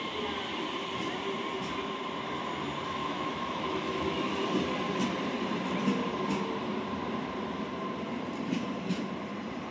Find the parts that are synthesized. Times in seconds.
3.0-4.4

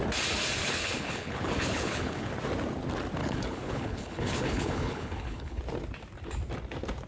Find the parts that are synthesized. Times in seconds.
0.6-2.3; 3.2-5.6

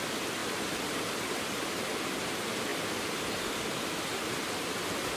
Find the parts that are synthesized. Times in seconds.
none